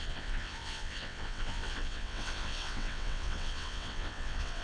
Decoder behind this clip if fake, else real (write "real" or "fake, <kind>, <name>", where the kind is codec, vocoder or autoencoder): fake, vocoder, WaveNeXt